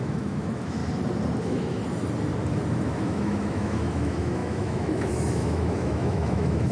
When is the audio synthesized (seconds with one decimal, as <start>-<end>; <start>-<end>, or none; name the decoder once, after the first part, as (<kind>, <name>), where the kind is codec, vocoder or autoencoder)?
0.0-0.8 (autoencoder, DAC-VAE); 1.4-1.8; 2.8-6.7